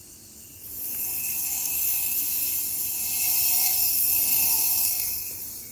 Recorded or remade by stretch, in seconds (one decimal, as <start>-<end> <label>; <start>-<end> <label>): 0.0-1.2 recorded; 1.2-2.2 remade; 2.2-3.6 recorded; 3.6-5.3 remade; 5.3-5.7 recorded